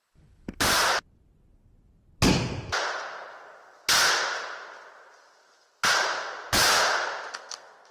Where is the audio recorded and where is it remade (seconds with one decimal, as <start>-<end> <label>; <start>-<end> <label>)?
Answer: 0.0-7.3 recorded; 7.3-7.9 remade